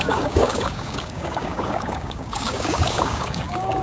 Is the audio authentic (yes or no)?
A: no